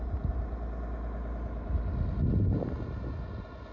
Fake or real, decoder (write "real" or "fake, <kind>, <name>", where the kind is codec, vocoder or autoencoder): real